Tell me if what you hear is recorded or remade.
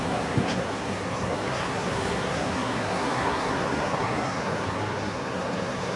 remade